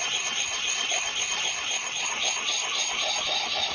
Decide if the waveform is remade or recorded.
recorded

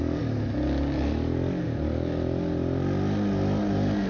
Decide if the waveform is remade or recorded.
recorded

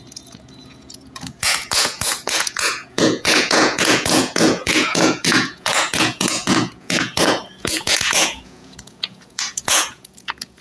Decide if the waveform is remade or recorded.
remade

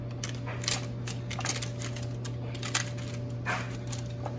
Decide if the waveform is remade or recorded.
recorded